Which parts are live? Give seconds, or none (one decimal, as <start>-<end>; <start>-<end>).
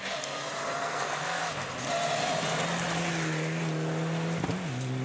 0.0-0.8; 1.4-5.0